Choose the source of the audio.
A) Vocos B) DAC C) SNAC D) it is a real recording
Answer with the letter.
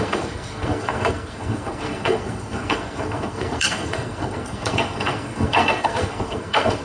C